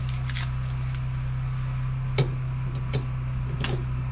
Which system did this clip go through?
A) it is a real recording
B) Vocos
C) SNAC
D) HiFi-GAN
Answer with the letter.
A